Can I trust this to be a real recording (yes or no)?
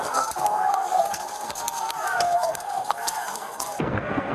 no